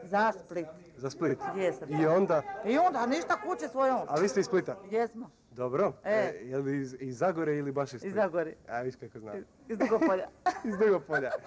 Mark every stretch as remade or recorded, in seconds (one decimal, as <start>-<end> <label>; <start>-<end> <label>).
0.0-11.5 recorded